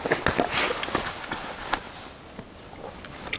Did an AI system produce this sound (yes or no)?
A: no